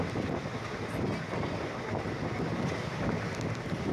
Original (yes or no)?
yes